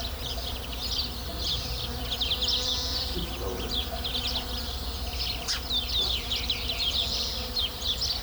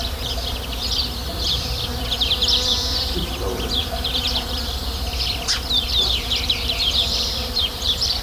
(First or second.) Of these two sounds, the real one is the first